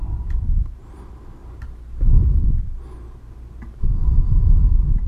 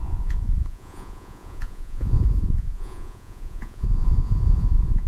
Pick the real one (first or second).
first